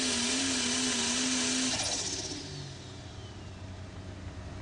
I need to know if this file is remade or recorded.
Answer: recorded